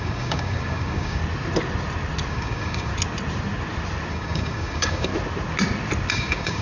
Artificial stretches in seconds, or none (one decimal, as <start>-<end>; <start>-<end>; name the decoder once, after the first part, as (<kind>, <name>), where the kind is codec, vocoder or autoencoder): 0.0-1.2 (codec, DAC); 2.3-2.9; 4.1-5.1; 6.1-6.6

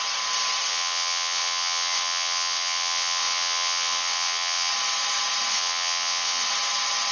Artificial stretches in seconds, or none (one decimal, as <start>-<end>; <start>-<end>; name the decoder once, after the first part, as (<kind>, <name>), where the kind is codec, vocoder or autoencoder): 0.7-4.7 (vocoder, WaveNeXt); 5.5-6.5

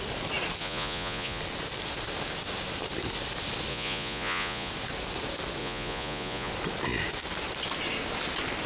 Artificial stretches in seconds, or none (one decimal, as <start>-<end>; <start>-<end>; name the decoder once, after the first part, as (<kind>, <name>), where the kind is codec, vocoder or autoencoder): 0.6-1.4 (vocoder, Vocos); 3.7-4.7; 5.6-6.5

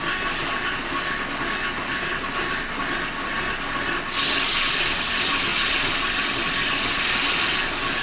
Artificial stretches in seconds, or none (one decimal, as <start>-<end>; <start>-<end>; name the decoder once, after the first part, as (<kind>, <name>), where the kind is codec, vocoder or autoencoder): none

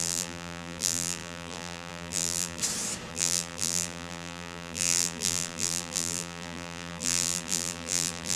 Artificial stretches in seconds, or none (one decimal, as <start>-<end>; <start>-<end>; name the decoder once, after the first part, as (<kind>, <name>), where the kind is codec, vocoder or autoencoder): 0.0-2.6 (vocoder, BigVGAN v2); 3.1-8.4